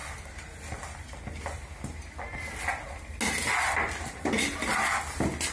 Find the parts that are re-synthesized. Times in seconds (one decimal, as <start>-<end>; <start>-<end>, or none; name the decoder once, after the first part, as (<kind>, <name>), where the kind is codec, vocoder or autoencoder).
none